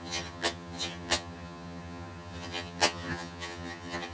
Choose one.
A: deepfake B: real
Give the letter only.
A